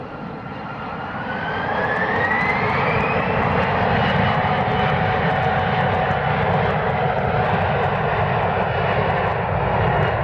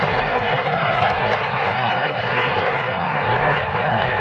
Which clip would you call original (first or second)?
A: first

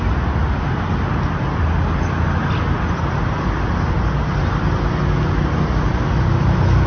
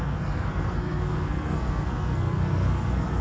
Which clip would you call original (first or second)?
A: first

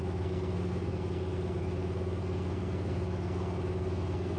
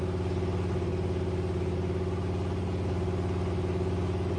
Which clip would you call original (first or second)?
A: second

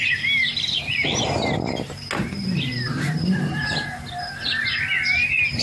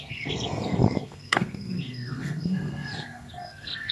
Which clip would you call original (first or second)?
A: first